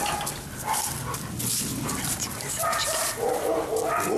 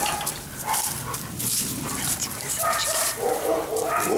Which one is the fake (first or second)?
second